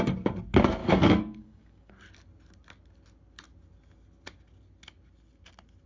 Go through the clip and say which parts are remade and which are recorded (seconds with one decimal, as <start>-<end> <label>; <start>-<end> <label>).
0.0-0.8 recorded; 0.8-1.9 remade; 1.9-5.9 recorded

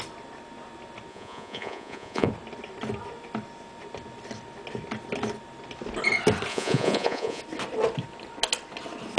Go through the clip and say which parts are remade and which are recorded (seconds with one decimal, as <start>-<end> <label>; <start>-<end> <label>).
0.0-1.1 recorded; 1.1-2.3 remade; 2.3-6.5 recorded; 6.5-7.4 remade; 7.4-9.2 recorded